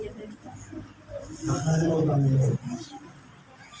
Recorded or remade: recorded